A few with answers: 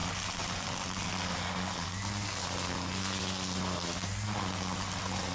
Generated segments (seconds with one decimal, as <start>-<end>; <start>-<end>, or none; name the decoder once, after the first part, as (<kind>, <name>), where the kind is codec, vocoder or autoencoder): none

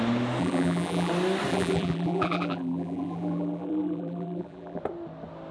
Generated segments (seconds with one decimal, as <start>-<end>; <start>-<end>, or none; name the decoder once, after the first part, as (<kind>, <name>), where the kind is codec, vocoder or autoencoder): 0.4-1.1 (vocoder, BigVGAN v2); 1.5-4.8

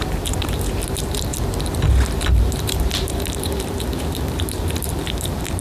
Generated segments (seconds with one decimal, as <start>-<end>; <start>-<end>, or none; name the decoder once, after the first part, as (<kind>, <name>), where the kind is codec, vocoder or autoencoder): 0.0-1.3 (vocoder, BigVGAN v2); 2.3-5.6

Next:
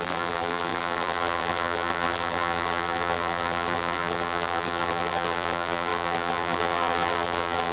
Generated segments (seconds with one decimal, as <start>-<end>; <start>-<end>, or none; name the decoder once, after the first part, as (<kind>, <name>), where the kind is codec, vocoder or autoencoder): 0.0-7.7 (vocoder, BigVGAN v2)

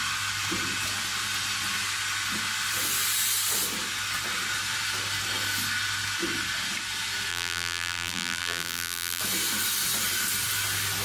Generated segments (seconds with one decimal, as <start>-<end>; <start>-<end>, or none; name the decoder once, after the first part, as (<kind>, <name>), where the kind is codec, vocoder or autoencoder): 7.3-9.2 (vocoder, BigVGAN v2)

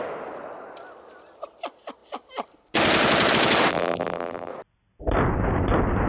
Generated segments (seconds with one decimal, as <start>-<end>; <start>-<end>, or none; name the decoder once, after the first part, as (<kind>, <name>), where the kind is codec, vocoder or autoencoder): 3.7-4.5 (vocoder, BigVGAN v2)

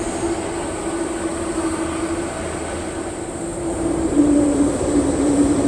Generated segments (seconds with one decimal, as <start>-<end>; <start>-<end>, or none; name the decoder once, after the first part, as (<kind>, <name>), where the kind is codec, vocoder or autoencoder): 1.3-1.9 (vocoder, BigVGAN v2); 3.5-5.7